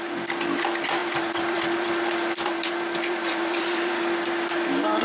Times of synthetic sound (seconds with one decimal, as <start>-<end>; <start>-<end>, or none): 1.0-4.0